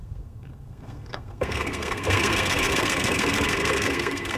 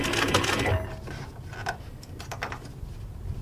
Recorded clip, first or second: second